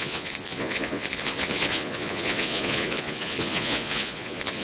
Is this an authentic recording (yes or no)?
no